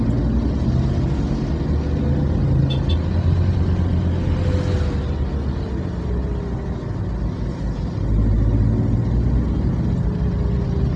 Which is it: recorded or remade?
recorded